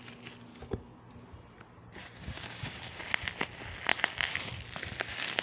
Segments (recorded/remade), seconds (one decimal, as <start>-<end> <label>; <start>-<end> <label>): 0.0-0.5 recorded; 0.5-1.0 remade; 1.0-2.0 recorded; 2.0-3.0 remade; 3.0-5.4 recorded